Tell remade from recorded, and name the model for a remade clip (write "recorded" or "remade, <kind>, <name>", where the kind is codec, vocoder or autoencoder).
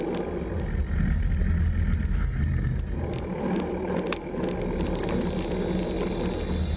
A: recorded